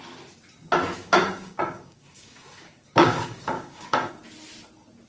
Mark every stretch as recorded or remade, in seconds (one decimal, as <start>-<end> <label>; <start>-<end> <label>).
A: 0.0-1.0 recorded; 1.0-4.1 remade; 4.1-5.1 recorded